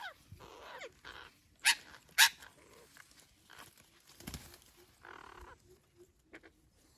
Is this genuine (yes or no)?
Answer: yes